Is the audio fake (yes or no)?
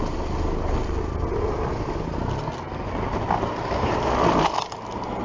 no